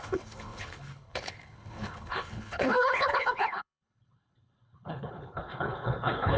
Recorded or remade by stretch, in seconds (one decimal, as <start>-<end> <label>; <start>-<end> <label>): 0.0-6.4 remade